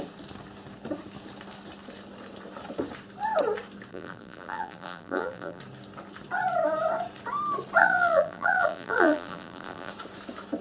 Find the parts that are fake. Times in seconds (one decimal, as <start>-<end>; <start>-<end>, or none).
3.9-5.6; 7.8-9.9